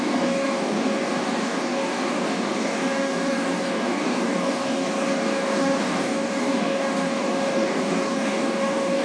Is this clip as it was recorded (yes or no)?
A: no